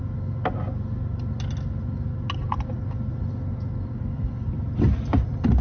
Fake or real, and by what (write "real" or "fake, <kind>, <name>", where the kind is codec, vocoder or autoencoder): real